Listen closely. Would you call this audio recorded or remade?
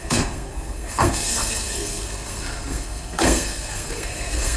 remade